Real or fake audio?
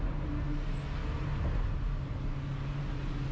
real